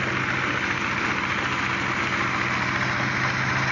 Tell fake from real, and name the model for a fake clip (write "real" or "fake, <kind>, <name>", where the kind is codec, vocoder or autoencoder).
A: real